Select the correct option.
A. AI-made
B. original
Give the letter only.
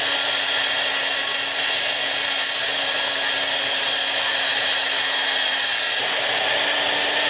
B